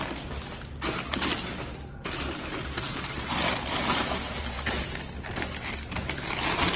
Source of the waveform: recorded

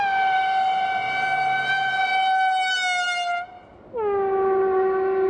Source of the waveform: recorded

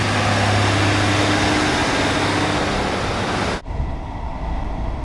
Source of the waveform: recorded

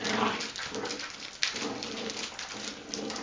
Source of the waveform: recorded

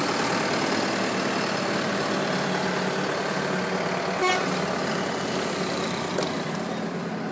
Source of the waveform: recorded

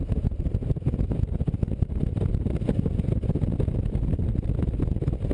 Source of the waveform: recorded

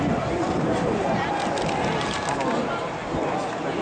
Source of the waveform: recorded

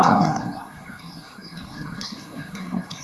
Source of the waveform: remade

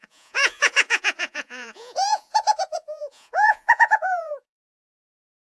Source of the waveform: remade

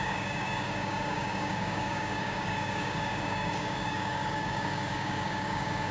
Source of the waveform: remade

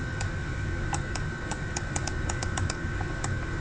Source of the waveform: remade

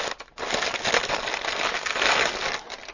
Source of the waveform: recorded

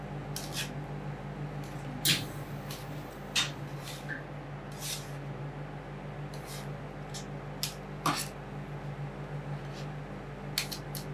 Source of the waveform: recorded